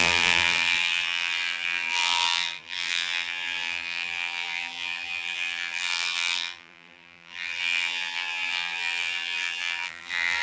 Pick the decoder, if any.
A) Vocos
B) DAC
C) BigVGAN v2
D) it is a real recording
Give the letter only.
C